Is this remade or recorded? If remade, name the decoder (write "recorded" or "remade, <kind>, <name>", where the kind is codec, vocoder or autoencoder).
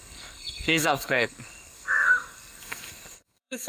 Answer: remade, codec, SNAC